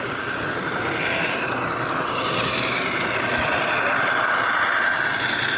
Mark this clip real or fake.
real